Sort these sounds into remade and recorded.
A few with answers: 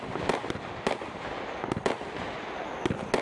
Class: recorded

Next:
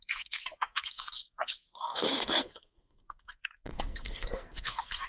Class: remade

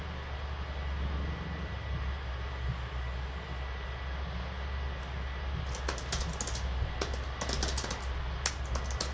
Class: recorded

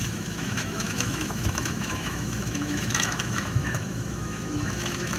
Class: remade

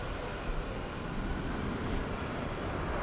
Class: recorded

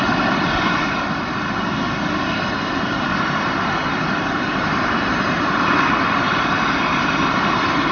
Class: remade